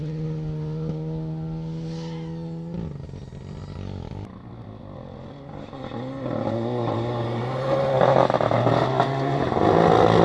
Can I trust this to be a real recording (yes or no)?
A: yes